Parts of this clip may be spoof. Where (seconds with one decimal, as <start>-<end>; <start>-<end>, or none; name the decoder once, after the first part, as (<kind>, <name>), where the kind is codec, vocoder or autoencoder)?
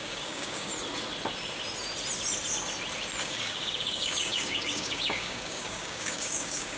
0.0-0.7 (codec, DAC); 3.2-6.8